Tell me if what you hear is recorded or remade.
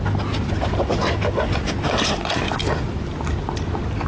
recorded